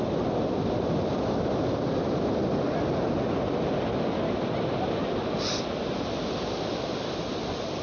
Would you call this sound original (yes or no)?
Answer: yes